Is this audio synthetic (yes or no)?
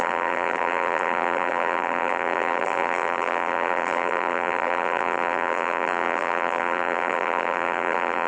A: yes